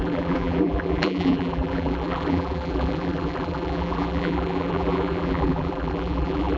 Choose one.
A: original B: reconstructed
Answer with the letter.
B